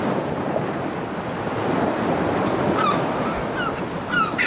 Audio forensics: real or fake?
real